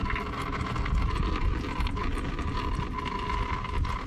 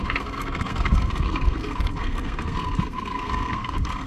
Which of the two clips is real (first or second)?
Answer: first